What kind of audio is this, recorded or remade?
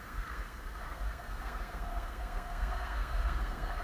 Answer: remade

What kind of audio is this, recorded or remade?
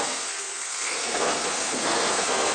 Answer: remade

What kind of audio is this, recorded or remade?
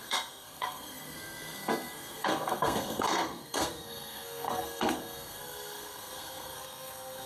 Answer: remade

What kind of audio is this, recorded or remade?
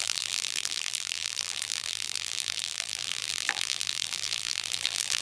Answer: remade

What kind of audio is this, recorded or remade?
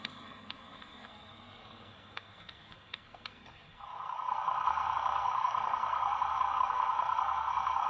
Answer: remade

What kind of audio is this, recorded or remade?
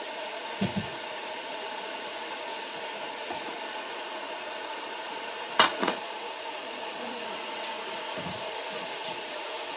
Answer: remade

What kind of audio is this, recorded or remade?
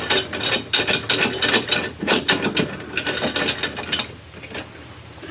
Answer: recorded